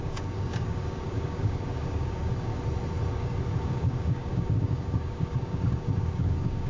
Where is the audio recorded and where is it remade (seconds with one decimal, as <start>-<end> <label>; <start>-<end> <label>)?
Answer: 0.0-2.5 remade; 2.5-3.1 recorded; 3.1-6.7 remade

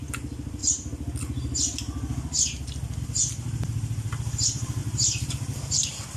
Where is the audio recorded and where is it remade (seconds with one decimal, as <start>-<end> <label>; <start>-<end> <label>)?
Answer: 0.0-0.6 remade; 0.6-3.0 recorded; 3.0-4.8 remade; 4.8-5.3 recorded; 5.3-6.2 remade

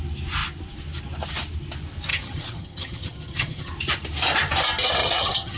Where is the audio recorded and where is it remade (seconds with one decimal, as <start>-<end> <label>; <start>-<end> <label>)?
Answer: 0.0-2.1 recorded; 2.1-3.7 remade; 3.7-5.0 recorded; 5.0-5.6 remade

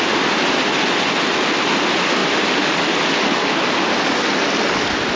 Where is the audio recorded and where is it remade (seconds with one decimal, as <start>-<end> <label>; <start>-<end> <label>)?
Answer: 0.0-5.2 recorded

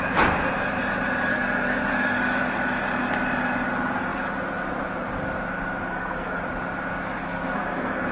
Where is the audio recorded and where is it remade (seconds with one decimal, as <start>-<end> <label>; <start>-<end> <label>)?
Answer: 0.0-1.3 recorded; 1.3-2.2 remade; 2.2-5.9 recorded; 5.9-6.4 remade; 6.4-7.2 recorded; 7.2-8.1 remade

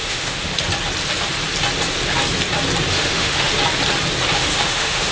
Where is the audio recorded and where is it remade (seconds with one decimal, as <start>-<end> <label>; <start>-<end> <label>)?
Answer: 0.0-0.5 remade; 0.5-2.9 recorded; 2.9-3.5 remade; 3.5-4.3 recorded; 4.3-5.1 remade